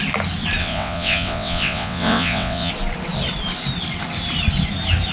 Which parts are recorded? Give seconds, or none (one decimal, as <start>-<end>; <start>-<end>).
0.0-0.6; 2.7-5.1